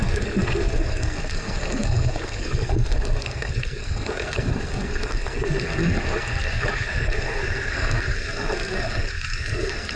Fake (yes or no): yes